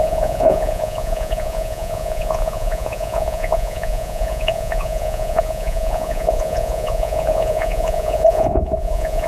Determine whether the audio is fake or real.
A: fake